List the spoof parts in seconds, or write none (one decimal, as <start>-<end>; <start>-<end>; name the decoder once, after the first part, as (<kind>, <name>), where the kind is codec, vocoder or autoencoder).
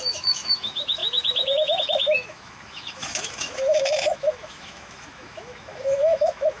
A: 0.0-6.6 (autoencoder, DAC-VAE)